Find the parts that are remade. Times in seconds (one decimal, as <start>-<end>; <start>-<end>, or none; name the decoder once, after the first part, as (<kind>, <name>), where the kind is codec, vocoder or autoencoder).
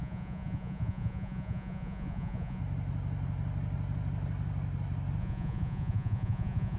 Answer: 0.0-2.6 (vocoder, Vocos); 5.2-6.8